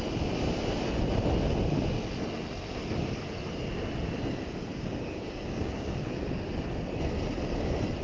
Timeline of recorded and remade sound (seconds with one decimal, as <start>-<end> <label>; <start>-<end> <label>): 0.0-4.7 recorded; 4.7-6.5 remade; 6.5-8.0 recorded